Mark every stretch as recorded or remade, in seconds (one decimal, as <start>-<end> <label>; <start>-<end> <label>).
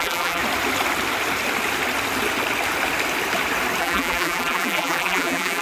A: 0.0-0.4 remade; 0.4-3.8 recorded; 3.8-5.6 remade